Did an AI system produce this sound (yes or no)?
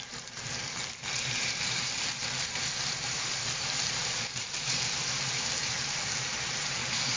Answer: yes